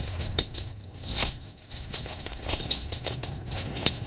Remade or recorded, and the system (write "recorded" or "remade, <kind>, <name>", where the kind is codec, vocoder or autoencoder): remade, codec, SNAC